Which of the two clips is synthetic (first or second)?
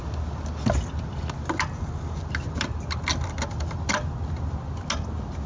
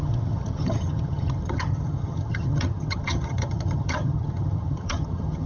second